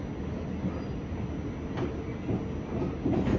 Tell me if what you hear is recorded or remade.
recorded